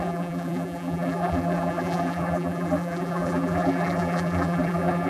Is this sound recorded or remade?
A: remade